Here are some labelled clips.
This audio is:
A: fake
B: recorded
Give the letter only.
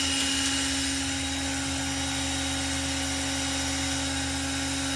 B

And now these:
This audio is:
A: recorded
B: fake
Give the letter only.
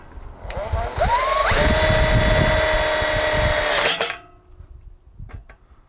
A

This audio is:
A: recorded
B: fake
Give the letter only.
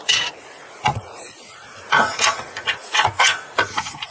B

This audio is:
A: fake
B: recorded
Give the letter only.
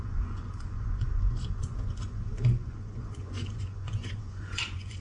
A